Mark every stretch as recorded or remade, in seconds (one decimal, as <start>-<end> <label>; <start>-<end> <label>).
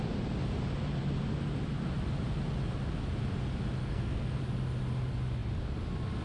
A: 0.0-3.8 recorded; 3.8-4.4 remade; 4.4-6.2 recorded